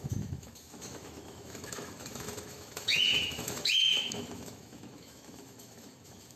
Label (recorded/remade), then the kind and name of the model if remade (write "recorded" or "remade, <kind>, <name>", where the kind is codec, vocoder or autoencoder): remade, autoencoder, DAC-VAE